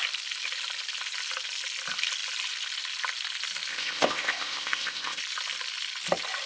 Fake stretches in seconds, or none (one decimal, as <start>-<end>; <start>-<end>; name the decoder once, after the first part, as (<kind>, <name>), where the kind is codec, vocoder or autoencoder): 3.7-5.2 (codec, ZipCodec)

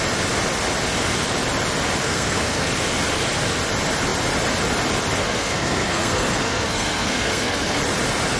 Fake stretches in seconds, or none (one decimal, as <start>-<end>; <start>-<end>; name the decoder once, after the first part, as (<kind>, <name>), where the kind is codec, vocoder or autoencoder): 2.0-2.7 (codec, SNAC); 5.2-7.8